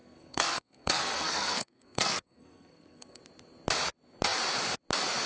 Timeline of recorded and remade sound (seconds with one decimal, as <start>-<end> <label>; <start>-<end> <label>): 0.0-3.2 remade; 3.2-5.3 recorded

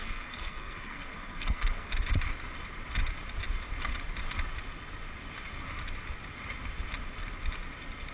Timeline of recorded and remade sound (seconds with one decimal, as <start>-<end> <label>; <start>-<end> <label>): 0.0-1.9 remade; 1.9-8.1 recorded